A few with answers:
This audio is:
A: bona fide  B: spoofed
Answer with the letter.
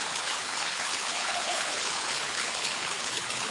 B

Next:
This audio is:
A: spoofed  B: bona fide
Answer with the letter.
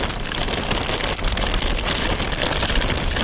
B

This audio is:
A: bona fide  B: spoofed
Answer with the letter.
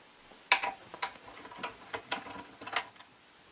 A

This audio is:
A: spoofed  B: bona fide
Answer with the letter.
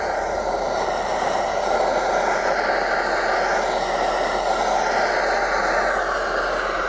B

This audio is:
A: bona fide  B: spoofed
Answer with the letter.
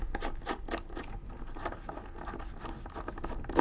A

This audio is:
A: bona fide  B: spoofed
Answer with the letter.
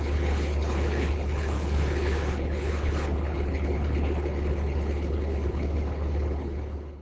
B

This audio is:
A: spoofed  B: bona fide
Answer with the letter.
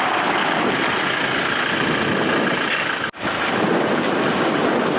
B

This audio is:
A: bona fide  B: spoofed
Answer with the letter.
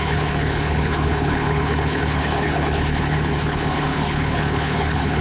B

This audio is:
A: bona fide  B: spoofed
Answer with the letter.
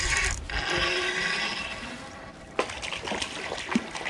A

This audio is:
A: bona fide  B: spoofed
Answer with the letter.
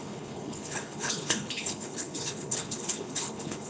B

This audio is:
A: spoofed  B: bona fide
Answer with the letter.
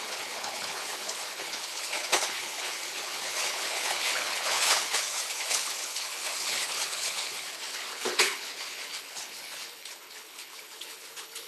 A